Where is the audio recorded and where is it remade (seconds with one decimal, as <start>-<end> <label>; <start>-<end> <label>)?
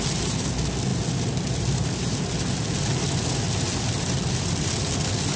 0.0-5.4 recorded